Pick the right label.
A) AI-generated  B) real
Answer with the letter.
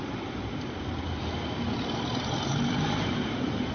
A